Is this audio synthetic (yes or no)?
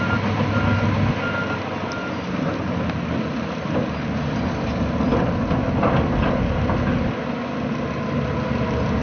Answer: no